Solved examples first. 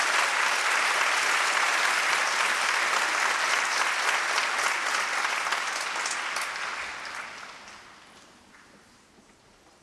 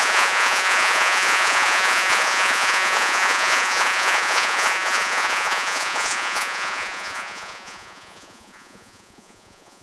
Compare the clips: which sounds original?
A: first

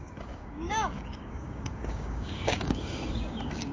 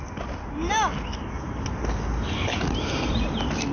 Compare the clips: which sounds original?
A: second